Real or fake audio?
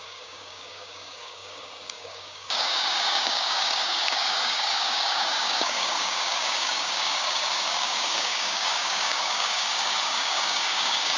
fake